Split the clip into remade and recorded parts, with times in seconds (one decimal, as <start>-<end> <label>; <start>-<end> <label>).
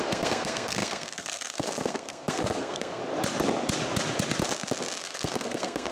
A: 0.0-3.0 remade; 3.0-5.0 recorded; 5.0-5.9 remade